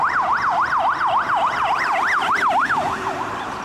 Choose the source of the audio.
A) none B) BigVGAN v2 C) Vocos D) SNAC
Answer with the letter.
B